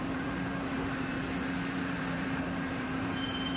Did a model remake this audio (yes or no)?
yes